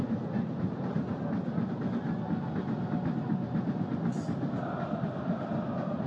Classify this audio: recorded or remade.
recorded